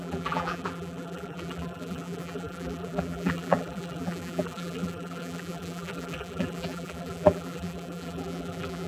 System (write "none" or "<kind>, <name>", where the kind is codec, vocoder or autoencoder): vocoder, BigVGAN v2